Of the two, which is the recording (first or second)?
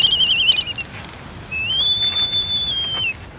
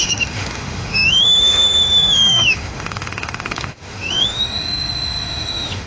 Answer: first